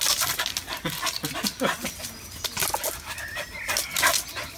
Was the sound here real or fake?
real